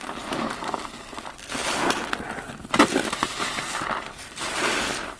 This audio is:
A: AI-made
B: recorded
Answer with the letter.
B